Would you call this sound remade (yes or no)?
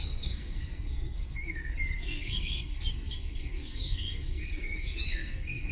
yes